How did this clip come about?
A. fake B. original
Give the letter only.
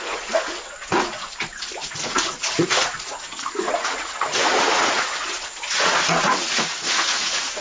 A